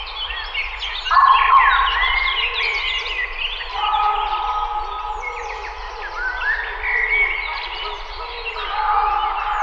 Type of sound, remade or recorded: recorded